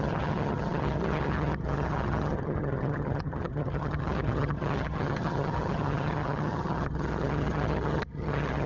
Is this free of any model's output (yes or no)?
no